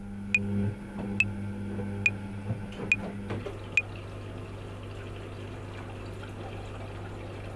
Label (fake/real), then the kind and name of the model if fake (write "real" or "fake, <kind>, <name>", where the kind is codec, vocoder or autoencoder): real